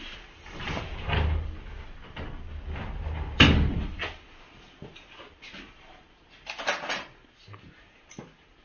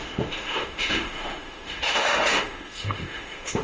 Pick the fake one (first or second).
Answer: second